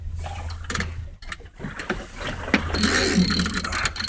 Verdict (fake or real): real